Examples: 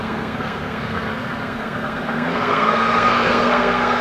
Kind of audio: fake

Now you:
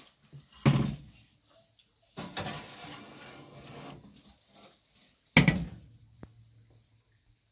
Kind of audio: real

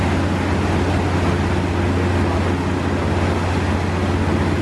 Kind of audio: real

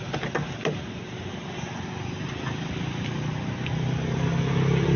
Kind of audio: real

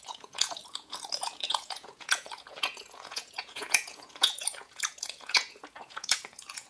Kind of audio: fake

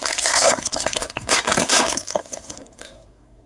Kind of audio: fake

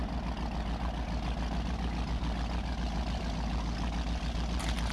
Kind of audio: real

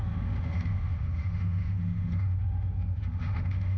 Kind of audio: fake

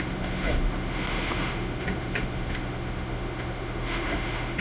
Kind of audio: fake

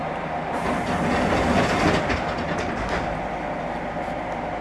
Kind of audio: real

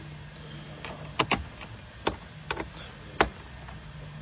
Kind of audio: real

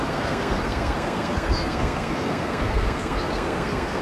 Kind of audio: fake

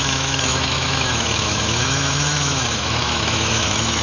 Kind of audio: fake